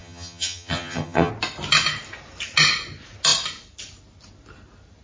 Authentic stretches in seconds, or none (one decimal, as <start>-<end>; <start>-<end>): 1.3-5.0